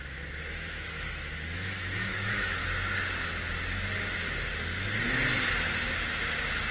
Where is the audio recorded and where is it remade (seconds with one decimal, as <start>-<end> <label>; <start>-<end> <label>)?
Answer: 0.0-0.5 recorded; 0.5-2.6 remade; 2.6-6.7 recorded